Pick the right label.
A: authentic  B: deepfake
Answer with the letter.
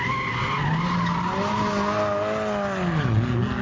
A